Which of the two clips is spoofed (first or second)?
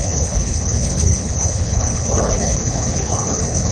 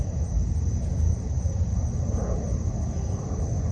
first